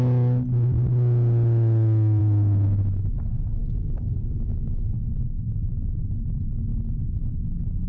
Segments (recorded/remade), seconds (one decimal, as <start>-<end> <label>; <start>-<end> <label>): 0.0-7.9 recorded